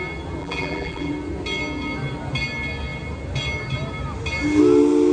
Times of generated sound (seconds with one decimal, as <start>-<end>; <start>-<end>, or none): 0.4-1.1